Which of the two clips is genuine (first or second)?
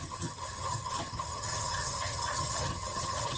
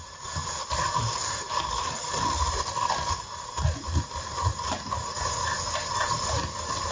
second